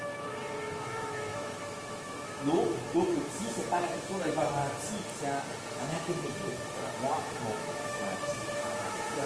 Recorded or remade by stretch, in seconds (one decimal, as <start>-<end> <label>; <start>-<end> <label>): 0.0-4.6 remade; 4.6-5.7 recorded; 5.7-9.3 remade